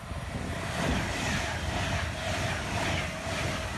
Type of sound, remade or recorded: recorded